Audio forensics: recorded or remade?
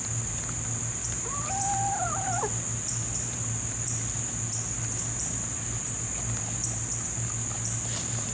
recorded